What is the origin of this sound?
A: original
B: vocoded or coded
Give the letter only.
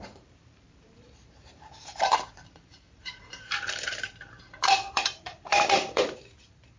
B